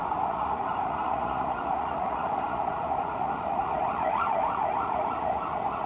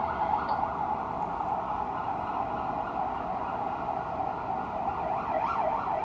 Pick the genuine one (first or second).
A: second